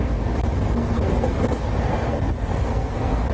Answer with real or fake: fake